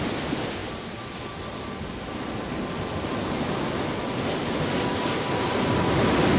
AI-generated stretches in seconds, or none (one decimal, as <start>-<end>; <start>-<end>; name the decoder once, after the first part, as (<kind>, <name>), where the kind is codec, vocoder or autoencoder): none